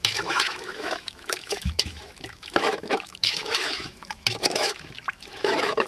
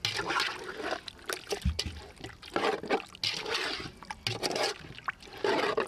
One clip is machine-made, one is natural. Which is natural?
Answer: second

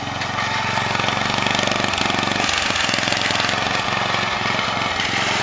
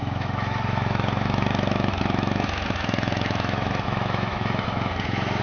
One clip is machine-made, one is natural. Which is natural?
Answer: first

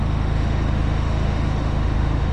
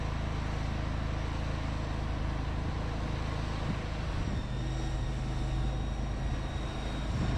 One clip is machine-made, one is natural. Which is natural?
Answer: second